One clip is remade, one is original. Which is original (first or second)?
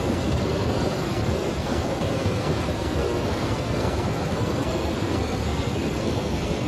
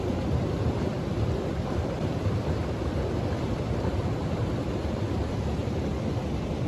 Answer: second